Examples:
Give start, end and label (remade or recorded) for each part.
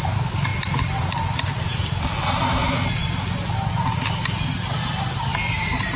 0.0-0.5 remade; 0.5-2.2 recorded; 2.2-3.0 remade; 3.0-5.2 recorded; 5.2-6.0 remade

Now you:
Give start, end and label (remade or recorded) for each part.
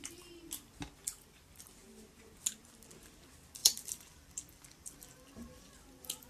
0.0-3.6 recorded; 3.6-5.7 remade; 5.7-6.3 recorded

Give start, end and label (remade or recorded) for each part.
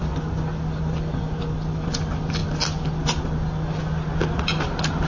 0.0-5.1 recorded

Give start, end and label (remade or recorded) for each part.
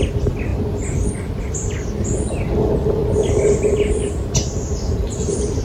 0.0-5.6 recorded